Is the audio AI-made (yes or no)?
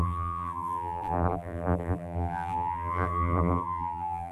yes